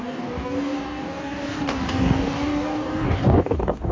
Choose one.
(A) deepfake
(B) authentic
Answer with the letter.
A